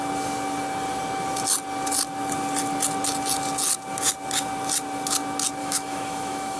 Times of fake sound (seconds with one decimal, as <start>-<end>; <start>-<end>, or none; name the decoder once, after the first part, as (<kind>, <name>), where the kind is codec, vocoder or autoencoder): 5.6-6.6 (autoencoder, DAC-VAE)